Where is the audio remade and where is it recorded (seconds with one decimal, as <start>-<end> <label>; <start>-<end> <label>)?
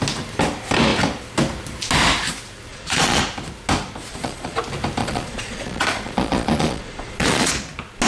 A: 0.0-2.7 recorded; 2.7-3.2 remade; 3.2-4.1 recorded; 4.1-4.6 remade; 4.6-5.0 recorded; 5.0-7.5 remade; 7.5-8.1 recorded